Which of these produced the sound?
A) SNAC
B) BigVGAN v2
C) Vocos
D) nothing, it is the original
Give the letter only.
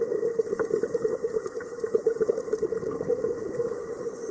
B